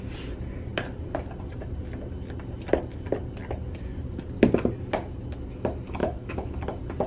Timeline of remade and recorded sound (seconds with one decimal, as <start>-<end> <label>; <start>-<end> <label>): 0.0-6.0 recorded; 6.0-6.5 remade; 6.5-7.1 recorded